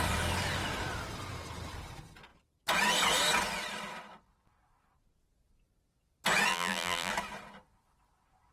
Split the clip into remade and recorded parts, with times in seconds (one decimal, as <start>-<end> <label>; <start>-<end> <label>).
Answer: 0.0-6.5 recorded; 6.5-7.1 remade; 7.1-8.5 recorded